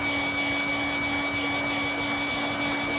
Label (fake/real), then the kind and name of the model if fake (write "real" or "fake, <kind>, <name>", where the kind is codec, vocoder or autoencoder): real